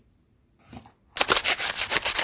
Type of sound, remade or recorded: recorded